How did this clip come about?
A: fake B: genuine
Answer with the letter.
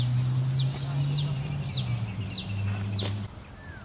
B